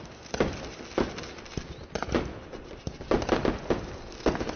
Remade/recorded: recorded